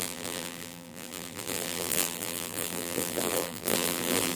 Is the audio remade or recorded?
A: remade